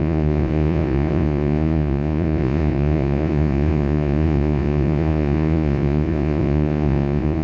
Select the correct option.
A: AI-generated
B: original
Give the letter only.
A